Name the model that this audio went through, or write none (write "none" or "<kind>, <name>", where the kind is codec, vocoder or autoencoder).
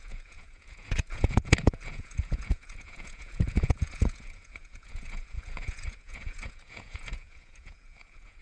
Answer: vocoder, Vocos